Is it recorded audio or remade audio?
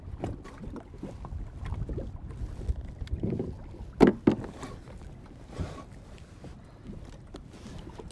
recorded